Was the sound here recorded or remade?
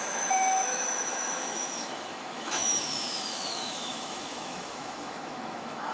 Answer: remade